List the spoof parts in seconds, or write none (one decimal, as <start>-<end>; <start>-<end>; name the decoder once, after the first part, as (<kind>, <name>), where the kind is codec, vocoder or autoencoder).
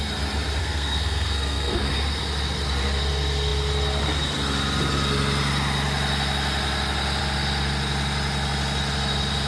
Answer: 0.6-1.9 (codec, SNAC)